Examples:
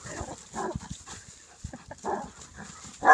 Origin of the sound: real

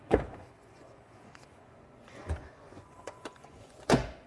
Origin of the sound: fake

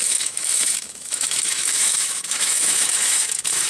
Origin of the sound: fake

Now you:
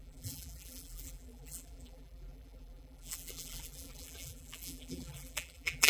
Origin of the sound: fake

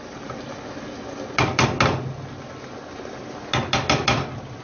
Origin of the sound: real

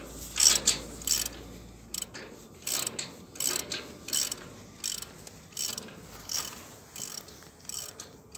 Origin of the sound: real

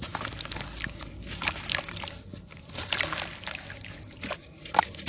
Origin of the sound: real